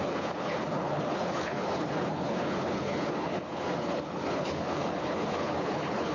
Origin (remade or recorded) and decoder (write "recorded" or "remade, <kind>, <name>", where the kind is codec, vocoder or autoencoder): remade, codec, HILCodec